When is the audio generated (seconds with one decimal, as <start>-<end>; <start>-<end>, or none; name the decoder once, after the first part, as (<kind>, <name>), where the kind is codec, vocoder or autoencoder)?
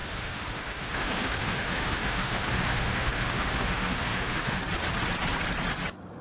0.0-4.6 (autoencoder, DAC-VAE)